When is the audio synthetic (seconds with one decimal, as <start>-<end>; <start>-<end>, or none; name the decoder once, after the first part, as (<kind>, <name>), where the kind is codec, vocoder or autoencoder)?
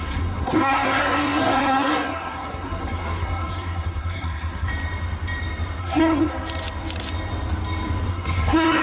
0.0-4.7 (codec, SNAC); 5.8-6.3; 8.1-8.8